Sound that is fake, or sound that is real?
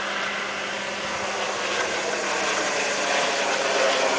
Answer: real